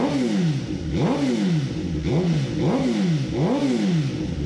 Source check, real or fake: real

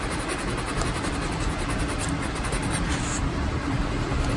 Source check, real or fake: real